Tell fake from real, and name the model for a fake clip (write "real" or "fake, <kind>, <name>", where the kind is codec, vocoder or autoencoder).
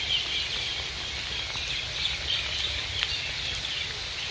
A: real